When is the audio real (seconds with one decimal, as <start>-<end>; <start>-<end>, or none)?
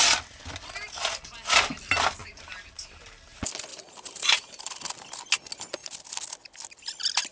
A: 0.0-2.2; 3.0-3.7; 4.6-7.3